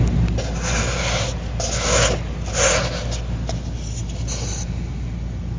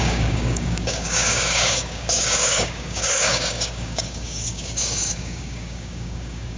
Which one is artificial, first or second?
second